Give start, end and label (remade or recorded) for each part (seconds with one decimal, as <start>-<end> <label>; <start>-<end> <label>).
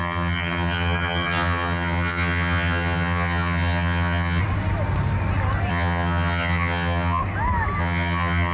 0.0-4.4 remade; 4.4-5.7 recorded; 5.7-7.2 remade; 7.2-7.8 recorded; 7.8-8.5 remade